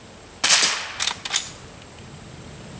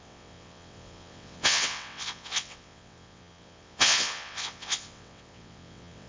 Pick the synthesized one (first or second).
second